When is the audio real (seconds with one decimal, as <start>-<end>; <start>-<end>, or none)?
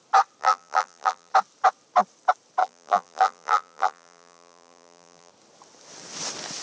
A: 0.0-0.4; 1.3-2.6; 5.3-6.6